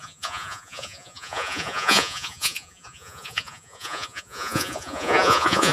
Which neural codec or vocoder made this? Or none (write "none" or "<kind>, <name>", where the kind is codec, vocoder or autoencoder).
vocoder, Vocos